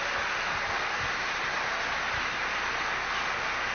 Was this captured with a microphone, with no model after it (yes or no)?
yes